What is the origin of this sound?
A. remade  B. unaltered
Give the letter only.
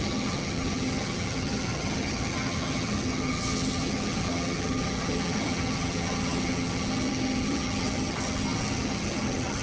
A